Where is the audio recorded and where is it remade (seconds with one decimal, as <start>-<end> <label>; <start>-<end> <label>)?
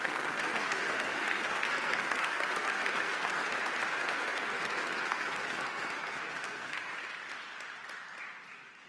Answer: 0.0-3.4 remade; 3.4-3.9 recorded; 3.9-6.9 remade; 6.9-8.9 recorded